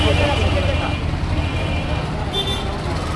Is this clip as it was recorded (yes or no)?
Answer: yes